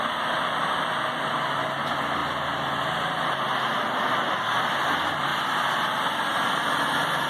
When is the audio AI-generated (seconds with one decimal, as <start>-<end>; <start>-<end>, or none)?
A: none